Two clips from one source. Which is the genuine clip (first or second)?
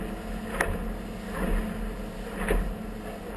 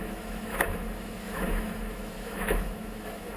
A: first